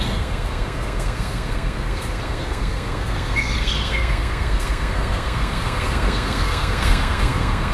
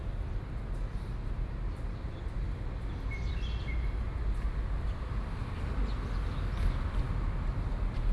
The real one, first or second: second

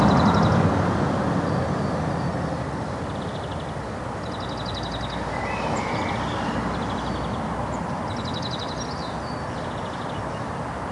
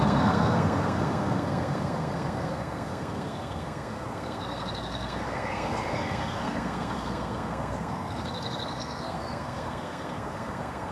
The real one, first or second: first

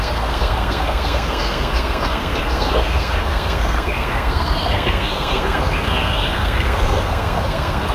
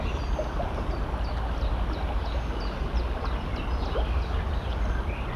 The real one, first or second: second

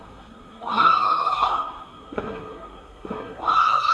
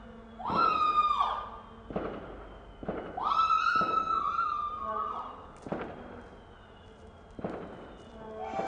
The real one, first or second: second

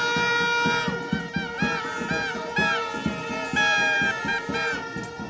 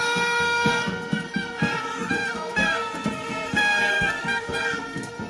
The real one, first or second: first